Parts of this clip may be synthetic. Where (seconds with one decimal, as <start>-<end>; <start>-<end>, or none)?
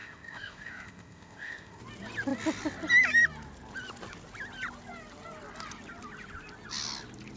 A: 0.0-1.8